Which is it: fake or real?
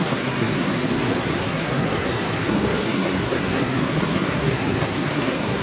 fake